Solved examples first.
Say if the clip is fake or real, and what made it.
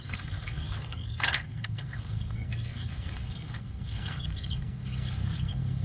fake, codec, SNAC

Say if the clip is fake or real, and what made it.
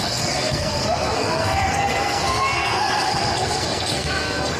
fake, codec, SNAC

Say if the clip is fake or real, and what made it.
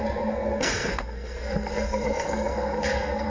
fake, codec, SNAC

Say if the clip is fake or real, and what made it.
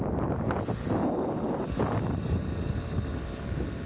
real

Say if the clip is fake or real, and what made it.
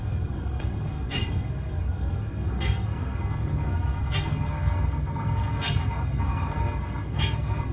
fake, codec, SNAC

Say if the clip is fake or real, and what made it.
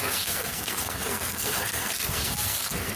fake, codec, SNAC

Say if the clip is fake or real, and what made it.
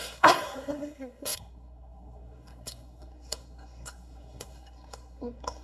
fake, codec, SNAC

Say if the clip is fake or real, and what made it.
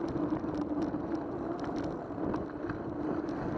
real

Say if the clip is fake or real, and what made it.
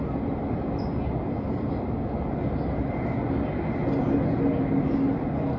real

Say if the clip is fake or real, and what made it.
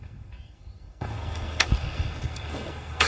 fake, codec, SNAC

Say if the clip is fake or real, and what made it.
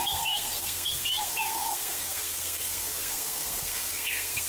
fake, codec, SNAC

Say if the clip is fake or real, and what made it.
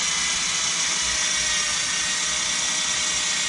real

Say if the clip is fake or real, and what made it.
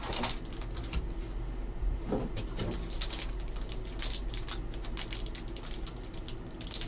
real